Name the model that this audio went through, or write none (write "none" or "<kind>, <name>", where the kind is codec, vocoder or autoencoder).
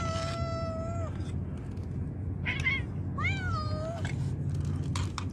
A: none